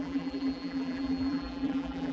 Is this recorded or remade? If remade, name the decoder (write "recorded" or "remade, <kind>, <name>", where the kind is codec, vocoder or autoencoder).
remade, vocoder, BigVGAN v2